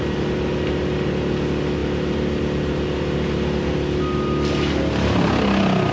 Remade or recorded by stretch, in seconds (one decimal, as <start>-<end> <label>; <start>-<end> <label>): 0.0-5.9 recorded